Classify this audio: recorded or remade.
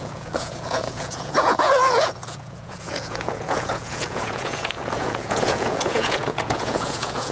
remade